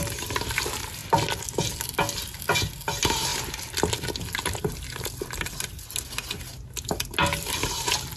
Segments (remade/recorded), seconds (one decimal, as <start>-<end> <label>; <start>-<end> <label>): 0.0-8.2 recorded